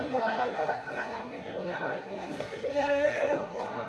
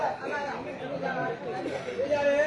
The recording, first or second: second